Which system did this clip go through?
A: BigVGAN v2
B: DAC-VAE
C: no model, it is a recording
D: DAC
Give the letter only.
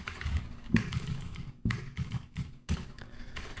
D